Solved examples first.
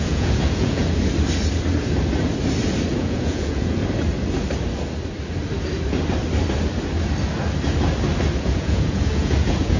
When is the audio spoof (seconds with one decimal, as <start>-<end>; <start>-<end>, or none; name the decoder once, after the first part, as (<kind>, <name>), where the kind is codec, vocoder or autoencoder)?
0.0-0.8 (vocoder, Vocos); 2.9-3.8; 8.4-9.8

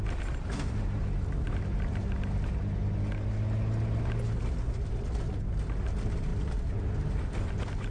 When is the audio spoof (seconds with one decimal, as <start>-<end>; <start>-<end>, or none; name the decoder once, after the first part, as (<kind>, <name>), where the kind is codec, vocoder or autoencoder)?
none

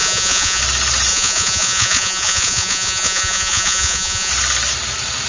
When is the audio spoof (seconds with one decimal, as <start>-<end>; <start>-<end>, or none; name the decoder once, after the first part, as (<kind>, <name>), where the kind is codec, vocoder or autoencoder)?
0.0-0.6 (vocoder, Vocos); 1.1-4.3

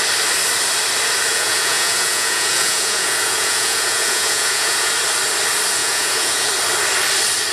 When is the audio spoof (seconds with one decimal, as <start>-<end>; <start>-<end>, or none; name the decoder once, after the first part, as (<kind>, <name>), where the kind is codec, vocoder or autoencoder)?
1.3-4.9 (vocoder, Vocos); 5.8-6.5